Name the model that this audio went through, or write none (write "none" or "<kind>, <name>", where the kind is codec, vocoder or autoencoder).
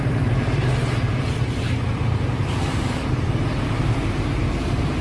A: vocoder, BigVGAN v2